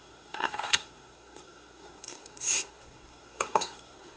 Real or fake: fake